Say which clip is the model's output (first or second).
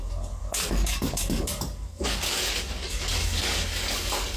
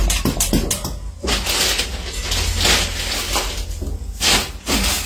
first